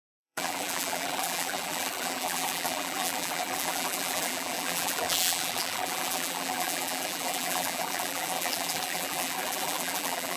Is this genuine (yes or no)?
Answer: no